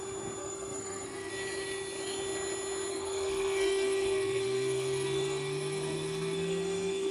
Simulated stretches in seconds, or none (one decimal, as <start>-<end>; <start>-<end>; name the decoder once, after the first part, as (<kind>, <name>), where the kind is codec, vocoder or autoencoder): 0.4-1.3 (codec, SNAC); 2.9-7.1